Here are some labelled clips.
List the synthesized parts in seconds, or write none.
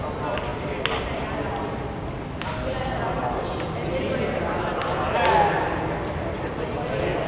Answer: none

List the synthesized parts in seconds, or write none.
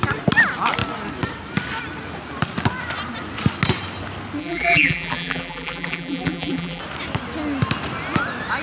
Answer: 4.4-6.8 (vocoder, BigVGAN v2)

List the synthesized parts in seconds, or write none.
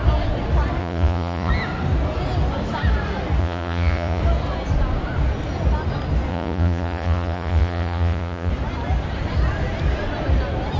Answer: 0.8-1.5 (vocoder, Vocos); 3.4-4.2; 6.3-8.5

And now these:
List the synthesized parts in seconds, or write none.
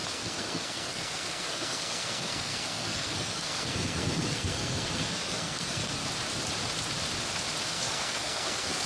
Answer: 0.0-6.0 (codec, SNAC); 7.7-8.9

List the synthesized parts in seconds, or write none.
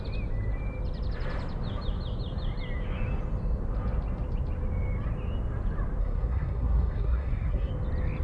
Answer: 6.0-7.7 (codec, SNAC)